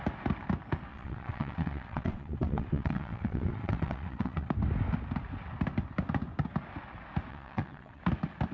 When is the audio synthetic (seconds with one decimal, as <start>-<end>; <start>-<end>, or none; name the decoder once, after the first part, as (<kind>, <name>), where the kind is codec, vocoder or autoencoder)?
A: 0.9-4.5 (vocoder, WaveNeXt); 7.3-8.0